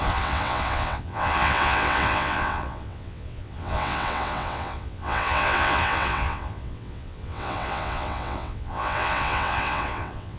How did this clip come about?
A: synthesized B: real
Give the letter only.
A